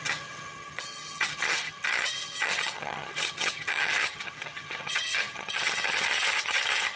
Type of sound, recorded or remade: remade